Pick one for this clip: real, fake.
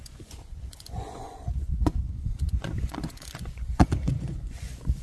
fake